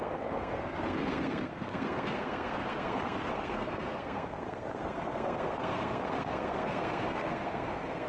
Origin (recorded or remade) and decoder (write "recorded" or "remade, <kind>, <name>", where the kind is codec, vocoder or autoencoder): remade, codec, SNAC